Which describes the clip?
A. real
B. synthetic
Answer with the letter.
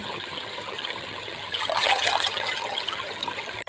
B